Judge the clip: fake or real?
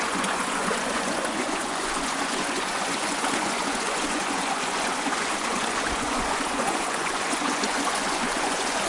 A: fake